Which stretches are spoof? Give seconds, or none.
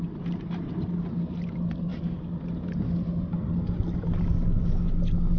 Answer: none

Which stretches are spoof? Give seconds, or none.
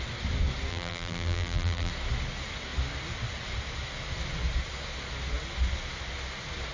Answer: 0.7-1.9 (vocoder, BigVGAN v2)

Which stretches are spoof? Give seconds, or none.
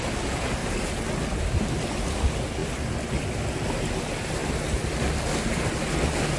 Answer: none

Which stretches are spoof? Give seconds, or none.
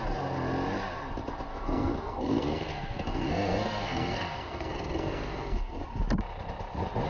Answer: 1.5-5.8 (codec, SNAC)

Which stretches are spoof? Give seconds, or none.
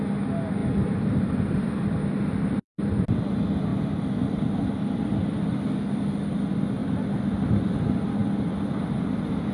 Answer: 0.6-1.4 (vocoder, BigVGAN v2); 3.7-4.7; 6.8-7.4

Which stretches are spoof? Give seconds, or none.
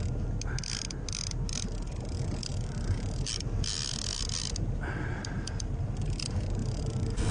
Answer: none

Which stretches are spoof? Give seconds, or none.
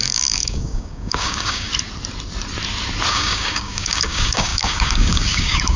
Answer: 0.0-1.7 (codec, DAC); 3.1-5.8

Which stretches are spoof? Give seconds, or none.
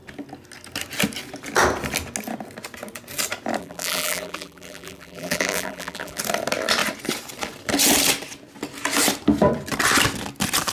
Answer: 3.6-6.2 (vocoder, BigVGAN v2)